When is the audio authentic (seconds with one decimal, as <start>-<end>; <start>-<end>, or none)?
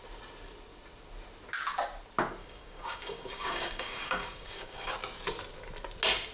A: 0.0-2.4; 4.9-6.3